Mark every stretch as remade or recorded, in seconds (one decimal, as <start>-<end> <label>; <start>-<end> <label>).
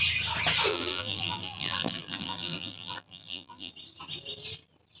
0.0-0.7 recorded; 0.7-3.7 remade; 3.7-5.0 recorded